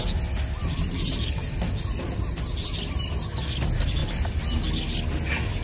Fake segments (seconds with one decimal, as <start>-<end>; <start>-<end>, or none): 0.6-3.2; 4.0-4.6

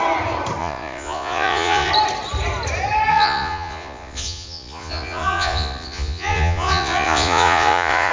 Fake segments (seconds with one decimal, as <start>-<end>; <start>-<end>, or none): 0.6-1.9; 3.1-8.1

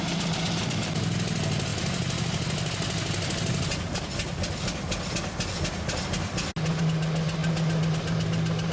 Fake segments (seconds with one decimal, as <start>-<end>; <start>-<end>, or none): none

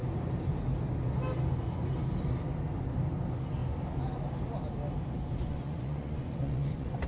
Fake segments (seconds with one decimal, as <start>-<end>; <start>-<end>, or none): 5.4-7.1

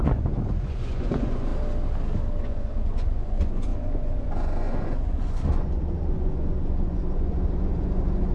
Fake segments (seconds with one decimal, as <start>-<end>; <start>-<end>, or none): 0.0-1.5; 2.4-8.3